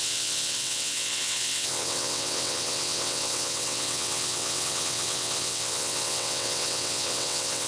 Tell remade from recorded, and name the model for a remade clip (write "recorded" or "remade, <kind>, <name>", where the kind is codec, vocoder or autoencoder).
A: remade, vocoder, WaveNeXt